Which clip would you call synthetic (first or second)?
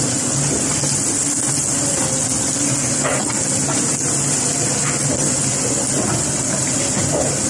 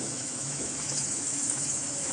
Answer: second